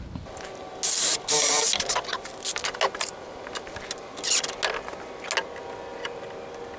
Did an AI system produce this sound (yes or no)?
no